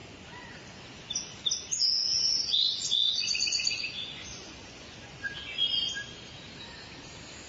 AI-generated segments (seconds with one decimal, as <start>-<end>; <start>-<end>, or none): 0.0-0.6; 2.0-5.9